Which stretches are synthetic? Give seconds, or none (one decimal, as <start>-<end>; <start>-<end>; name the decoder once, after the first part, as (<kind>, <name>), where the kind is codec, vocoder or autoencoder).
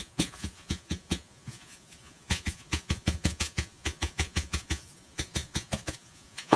0.0-6.6 (vocoder, Vocos)